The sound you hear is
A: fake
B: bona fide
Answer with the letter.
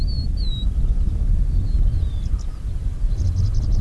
B